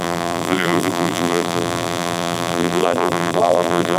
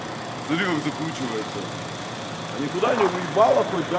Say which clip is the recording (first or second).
second